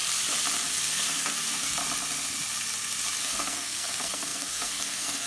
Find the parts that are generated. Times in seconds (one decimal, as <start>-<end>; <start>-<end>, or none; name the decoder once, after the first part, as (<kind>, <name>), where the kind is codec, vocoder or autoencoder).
0.8-1.8 (codec, SNAC); 3.2-5.3